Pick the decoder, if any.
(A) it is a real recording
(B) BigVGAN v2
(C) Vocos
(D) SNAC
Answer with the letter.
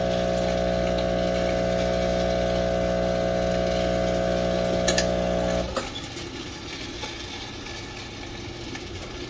A